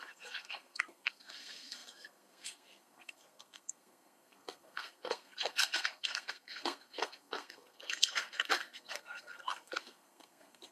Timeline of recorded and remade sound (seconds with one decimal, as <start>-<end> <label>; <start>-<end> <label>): 0.0-10.7 remade